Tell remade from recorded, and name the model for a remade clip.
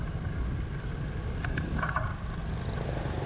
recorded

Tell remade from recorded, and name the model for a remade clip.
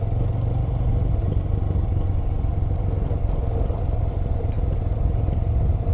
recorded